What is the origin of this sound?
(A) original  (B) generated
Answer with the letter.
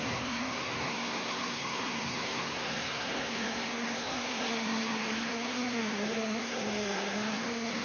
B